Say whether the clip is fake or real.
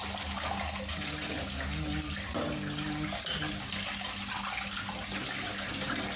real